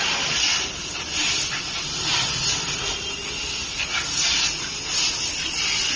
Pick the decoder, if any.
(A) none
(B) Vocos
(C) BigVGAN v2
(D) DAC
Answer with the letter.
A